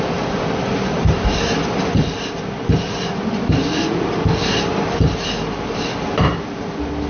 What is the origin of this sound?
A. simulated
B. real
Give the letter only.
A